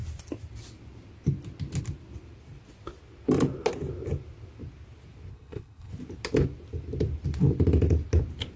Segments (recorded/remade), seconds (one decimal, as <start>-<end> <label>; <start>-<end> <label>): 0.0-5.3 recorded; 5.3-5.9 remade; 5.9-8.6 recorded